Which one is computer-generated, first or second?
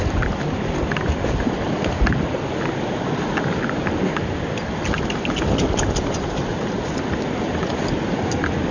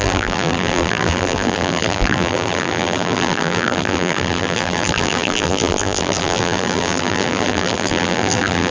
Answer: second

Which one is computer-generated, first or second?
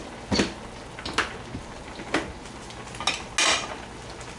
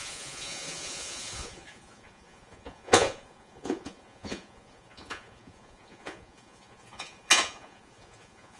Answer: second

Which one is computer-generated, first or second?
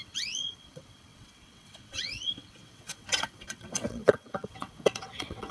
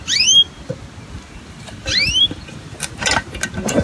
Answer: first